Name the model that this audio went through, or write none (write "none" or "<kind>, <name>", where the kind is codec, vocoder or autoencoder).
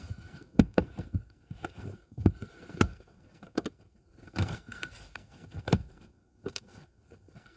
codec, SNAC